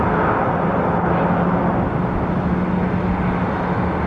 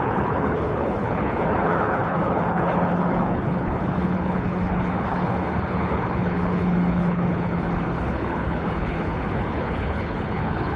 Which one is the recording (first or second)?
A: first